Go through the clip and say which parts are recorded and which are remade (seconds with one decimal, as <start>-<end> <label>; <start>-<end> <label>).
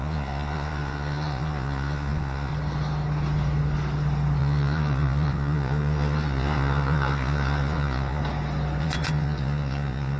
0.0-2.5 remade; 2.5-4.4 recorded; 4.4-8.2 remade; 8.2-8.8 recorded; 8.8-10.2 remade